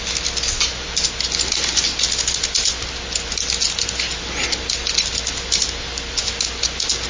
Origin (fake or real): real